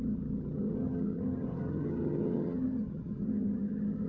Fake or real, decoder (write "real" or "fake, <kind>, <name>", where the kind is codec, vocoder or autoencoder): fake, vocoder, HiFi-GAN